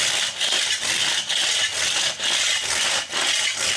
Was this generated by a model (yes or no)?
no